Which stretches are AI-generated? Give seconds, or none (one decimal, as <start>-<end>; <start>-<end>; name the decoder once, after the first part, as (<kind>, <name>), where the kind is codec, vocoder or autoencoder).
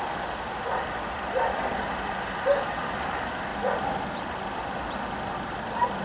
none